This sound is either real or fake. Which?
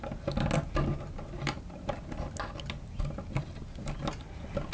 real